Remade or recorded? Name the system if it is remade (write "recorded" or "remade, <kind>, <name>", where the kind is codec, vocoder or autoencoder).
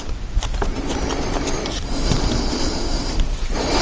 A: remade, vocoder, BigVGAN v2